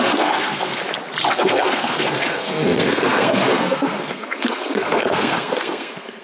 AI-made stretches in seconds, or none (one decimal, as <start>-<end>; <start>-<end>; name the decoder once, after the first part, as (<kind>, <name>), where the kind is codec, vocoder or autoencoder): 0.0-0.8 (codec, SNAC); 1.3-6.2